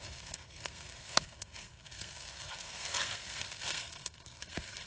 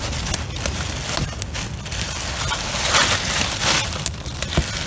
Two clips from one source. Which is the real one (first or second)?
second